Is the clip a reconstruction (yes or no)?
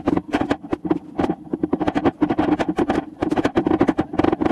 yes